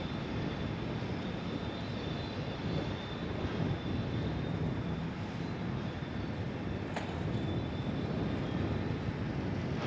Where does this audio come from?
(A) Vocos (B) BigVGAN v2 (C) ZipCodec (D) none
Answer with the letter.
B